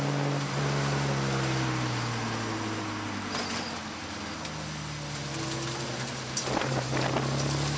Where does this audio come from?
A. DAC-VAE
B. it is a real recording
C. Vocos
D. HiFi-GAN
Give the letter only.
B